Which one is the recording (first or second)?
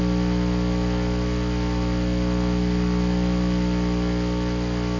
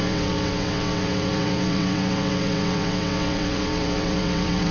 first